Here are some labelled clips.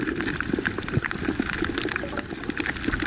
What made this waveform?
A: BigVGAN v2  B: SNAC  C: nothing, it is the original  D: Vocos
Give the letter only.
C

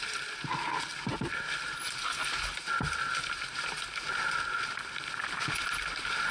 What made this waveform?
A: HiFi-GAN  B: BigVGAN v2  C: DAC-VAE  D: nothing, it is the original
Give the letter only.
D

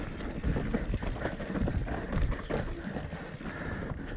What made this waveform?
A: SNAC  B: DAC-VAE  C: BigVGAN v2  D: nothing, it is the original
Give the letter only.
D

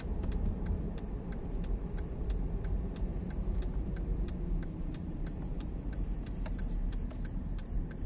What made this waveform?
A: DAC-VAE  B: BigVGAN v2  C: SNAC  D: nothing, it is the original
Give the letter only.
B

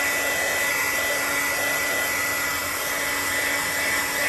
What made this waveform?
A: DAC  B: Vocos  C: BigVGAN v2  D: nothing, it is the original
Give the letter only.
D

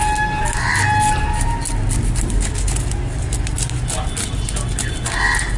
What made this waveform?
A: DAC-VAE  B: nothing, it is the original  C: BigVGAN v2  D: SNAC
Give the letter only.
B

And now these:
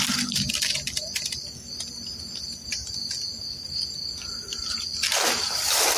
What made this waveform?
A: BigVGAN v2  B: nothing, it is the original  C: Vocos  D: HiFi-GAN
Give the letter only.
B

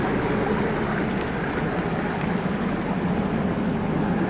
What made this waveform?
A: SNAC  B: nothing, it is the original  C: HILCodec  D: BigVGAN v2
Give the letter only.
B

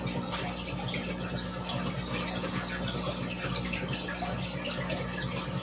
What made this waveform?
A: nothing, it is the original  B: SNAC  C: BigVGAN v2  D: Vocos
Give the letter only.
A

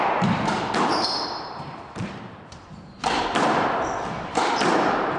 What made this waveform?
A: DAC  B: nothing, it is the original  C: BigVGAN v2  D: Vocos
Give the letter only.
C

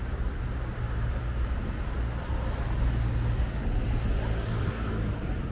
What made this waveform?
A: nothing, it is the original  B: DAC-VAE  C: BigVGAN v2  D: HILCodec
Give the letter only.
A